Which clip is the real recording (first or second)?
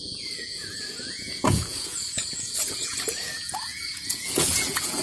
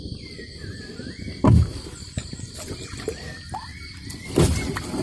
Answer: second